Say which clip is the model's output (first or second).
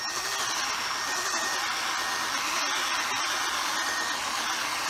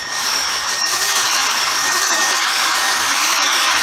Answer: second